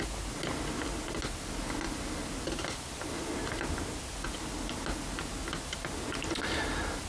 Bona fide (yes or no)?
yes